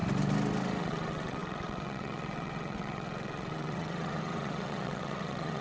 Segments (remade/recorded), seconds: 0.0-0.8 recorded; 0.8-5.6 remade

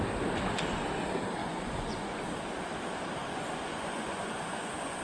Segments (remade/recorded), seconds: 0.0-1.4 recorded; 1.4-2.2 remade; 2.2-3.2 recorded; 3.2-5.0 remade

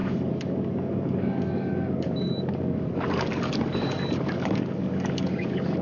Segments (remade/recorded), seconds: 0.0-5.8 remade

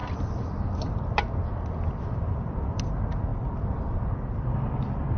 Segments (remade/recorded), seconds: 0.0-3.3 recorded; 3.3-4.1 remade; 4.1-5.2 recorded

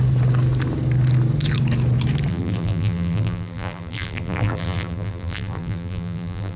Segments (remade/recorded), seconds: 0.0-2.3 recorded; 2.3-6.6 remade

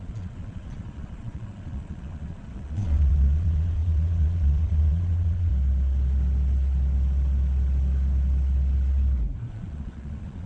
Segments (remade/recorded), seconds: 0.0-5.5 remade; 5.5-9.5 recorded; 9.5-10.5 remade

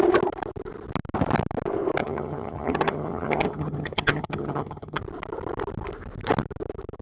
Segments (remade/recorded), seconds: 0.0-2.0 recorded; 2.0-5.0 remade; 5.0-7.0 recorded

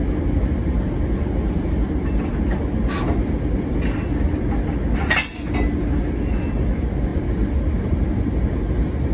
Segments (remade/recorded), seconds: 0.0-9.1 recorded